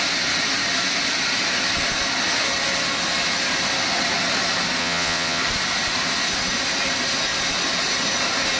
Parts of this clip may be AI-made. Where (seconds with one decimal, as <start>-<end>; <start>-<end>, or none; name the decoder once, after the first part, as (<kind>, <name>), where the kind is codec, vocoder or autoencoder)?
4.8-5.4 (vocoder, WaveNeXt)